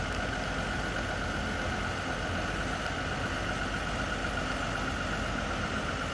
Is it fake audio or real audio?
real